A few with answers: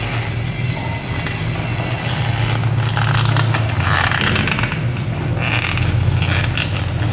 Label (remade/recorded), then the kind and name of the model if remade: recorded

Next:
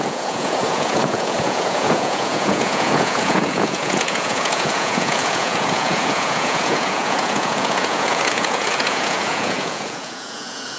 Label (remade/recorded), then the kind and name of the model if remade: remade, vocoder, Vocos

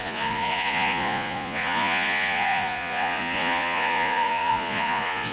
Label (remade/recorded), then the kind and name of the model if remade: remade, vocoder, Vocos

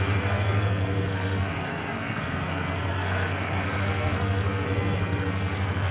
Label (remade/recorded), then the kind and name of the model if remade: remade, codec, SNAC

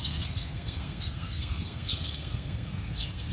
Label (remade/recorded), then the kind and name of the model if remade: remade, codec, SNAC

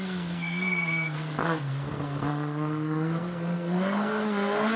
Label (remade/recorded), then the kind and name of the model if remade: remade, codec, SNAC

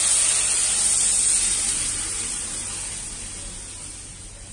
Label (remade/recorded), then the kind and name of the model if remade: recorded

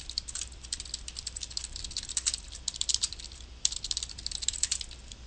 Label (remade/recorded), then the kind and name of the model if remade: remade, vocoder, BigVGAN v2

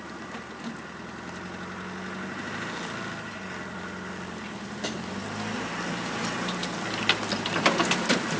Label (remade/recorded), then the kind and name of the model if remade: recorded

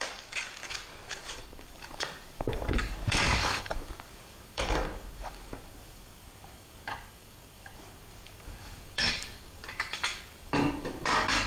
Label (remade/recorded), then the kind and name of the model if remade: remade, codec, DAC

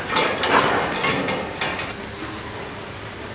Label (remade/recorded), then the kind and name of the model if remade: recorded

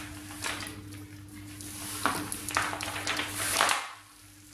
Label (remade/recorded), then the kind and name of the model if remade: recorded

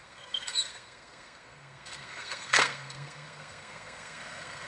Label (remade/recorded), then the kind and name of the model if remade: remade, codec, SNAC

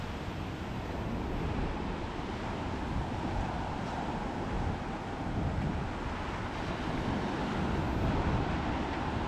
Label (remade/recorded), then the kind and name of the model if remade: recorded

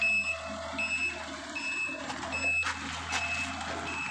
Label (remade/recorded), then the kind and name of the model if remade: recorded